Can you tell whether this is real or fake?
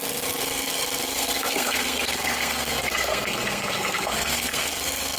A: fake